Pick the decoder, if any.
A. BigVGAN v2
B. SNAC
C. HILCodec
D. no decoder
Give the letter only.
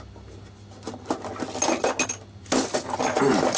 D